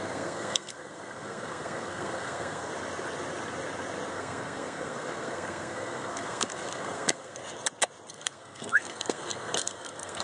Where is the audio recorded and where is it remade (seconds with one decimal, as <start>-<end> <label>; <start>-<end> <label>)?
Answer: 0.0-2.7 remade; 2.7-4.1 recorded; 4.1-7.4 remade; 7.4-8.1 recorded; 8.1-10.2 remade